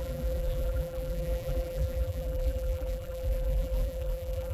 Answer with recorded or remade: remade